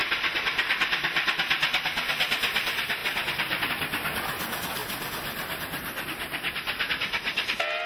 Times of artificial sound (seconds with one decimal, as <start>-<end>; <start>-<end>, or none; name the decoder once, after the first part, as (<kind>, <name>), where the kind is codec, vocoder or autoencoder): none